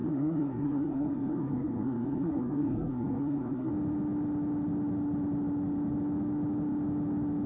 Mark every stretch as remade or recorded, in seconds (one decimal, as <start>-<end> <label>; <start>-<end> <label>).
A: 0.0-3.7 remade; 3.7-7.5 recorded